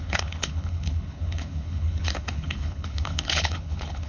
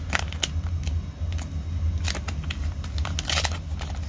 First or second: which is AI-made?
first